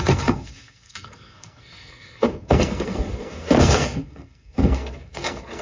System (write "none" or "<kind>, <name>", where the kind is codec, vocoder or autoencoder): codec, SNAC